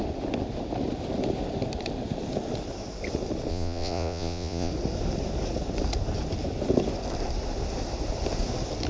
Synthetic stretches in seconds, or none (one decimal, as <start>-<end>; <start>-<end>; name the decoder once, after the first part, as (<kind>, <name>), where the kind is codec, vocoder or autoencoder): 3.5-4.7 (vocoder, Vocos)